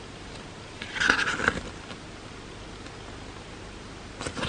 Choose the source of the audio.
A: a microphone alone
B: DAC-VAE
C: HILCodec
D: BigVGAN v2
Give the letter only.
A